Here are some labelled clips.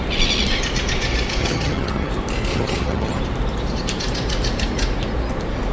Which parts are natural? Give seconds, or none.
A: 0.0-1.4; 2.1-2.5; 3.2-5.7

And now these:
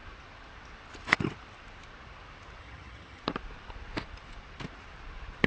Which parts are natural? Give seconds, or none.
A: 0.0-2.6; 3.2-5.5